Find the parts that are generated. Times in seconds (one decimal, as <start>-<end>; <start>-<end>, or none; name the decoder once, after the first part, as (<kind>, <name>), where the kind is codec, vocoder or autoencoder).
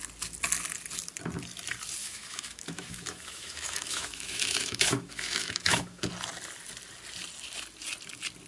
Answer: 2.0-6.1 (autoencoder, DAC-VAE)